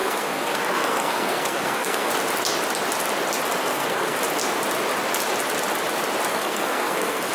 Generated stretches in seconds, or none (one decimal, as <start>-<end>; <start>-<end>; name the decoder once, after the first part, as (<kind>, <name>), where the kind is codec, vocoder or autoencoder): 0.0-2.1 (codec, SNAC); 3.6-4.2; 6.3-7.3